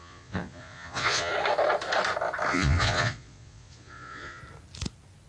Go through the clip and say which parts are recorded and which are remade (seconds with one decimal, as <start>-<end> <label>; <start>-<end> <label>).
0.0-1.3 remade; 1.3-2.5 recorded; 2.5-4.4 remade; 4.4-5.3 recorded